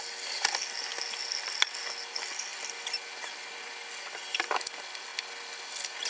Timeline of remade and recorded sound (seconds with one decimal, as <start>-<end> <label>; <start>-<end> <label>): 0.0-6.1 recorded